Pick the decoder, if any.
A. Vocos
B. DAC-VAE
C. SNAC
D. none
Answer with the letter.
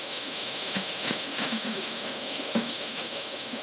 B